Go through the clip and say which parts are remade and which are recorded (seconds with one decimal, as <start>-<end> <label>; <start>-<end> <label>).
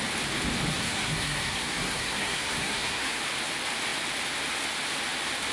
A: 0.0-0.7 recorded; 0.7-3.2 remade; 3.2-5.5 recorded